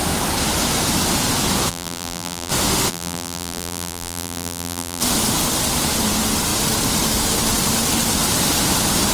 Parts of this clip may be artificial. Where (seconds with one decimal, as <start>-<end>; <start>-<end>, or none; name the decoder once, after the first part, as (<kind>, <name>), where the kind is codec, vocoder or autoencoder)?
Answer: 1.7-2.5 (vocoder, BigVGAN v2); 2.9-5.0